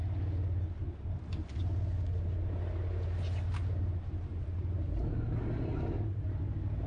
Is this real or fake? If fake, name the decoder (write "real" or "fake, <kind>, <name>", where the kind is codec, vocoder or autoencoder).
real